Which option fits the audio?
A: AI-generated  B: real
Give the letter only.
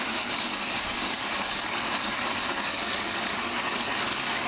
A